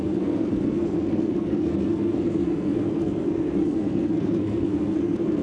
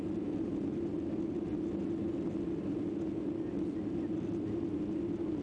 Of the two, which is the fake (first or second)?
first